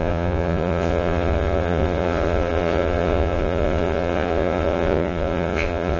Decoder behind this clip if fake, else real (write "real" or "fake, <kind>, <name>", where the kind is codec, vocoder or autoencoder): fake, vocoder, Vocos